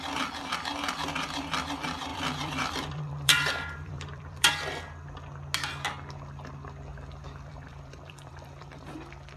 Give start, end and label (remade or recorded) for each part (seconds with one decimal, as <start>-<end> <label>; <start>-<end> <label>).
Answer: 0.0-2.1 recorded; 2.1-4.5 remade; 4.5-6.9 recorded; 6.9-8.9 remade; 8.9-9.4 recorded